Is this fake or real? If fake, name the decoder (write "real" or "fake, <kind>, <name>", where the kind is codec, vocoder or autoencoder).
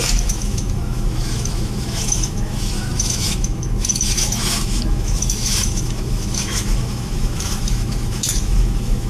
fake, autoencoder, DAC-VAE